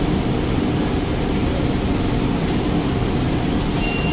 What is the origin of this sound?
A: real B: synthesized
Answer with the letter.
A